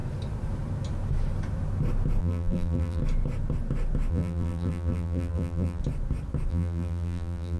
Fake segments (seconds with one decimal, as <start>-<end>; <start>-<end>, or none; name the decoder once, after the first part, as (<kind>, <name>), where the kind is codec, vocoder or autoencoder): 2.2-3.0 (vocoder, BigVGAN v2); 4.1-5.8; 6.5-7.6